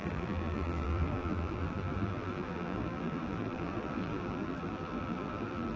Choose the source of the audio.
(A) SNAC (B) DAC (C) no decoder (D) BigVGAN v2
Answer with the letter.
D